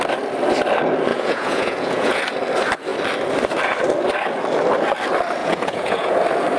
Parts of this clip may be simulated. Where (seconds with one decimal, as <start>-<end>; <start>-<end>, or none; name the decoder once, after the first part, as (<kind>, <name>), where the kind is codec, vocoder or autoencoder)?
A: 1.1-2.2 (vocoder, Vocos); 5.4-6.1